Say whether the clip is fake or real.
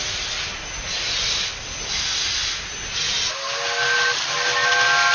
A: real